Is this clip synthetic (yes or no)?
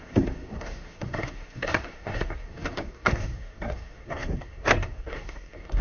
yes